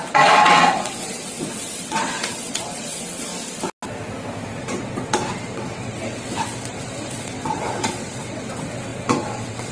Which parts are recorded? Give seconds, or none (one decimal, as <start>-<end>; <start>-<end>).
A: 3.3-4.6